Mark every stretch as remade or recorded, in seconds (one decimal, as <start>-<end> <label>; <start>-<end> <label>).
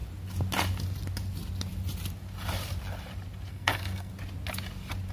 0.0-3.5 recorded; 3.5-4.1 remade; 4.1-5.1 recorded